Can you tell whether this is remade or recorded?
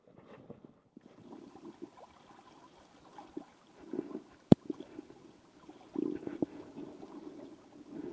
recorded